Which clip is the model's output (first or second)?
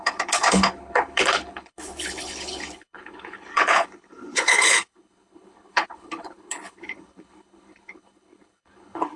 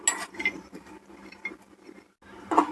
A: first